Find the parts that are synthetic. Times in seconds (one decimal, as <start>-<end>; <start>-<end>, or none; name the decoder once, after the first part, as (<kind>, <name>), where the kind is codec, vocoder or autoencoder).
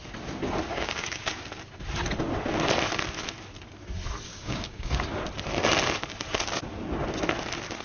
0.7-1.2 (codec, DAC); 4.3-5.0